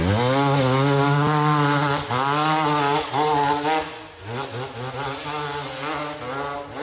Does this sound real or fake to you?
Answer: real